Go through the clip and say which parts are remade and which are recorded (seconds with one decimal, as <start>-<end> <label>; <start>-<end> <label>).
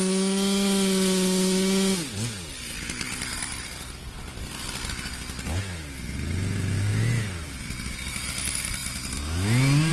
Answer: 0.0-9.9 recorded